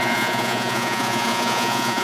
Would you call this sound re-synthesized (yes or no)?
yes